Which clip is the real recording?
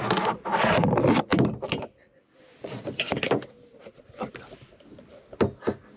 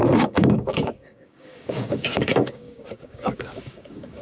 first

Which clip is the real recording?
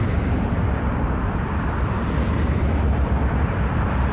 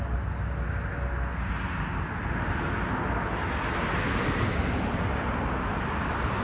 second